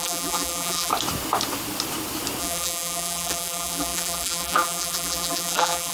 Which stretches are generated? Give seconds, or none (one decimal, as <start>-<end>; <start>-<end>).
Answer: 0.0-0.9; 2.4-5.9